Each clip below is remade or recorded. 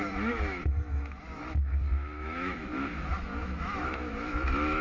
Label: remade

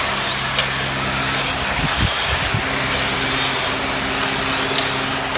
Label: recorded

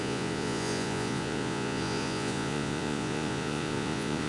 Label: remade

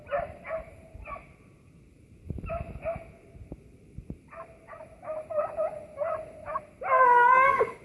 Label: recorded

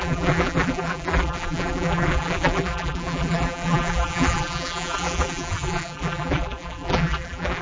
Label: remade